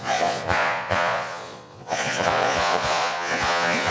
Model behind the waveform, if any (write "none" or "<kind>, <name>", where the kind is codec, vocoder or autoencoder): vocoder, Vocos